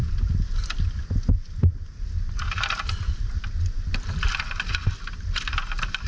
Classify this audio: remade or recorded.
recorded